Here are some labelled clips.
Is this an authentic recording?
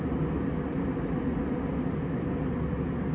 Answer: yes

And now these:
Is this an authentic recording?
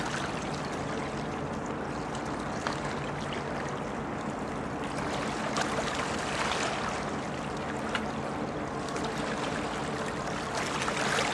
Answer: yes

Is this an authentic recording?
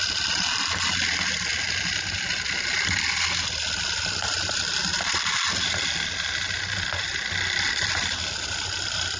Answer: yes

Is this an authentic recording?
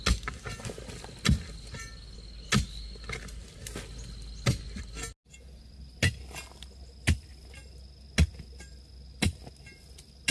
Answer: yes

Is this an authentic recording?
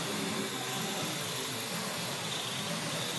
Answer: yes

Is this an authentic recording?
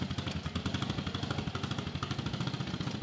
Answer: yes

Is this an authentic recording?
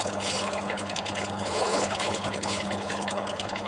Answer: no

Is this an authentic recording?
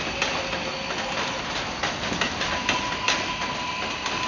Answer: yes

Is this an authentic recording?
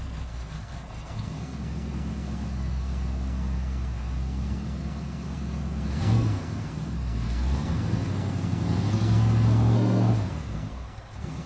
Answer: no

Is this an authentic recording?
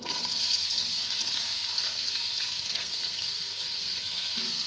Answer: no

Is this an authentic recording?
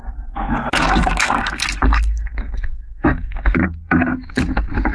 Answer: no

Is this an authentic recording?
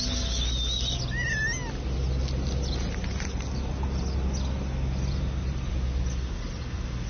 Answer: yes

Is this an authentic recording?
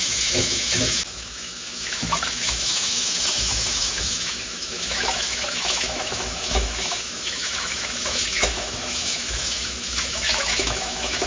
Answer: no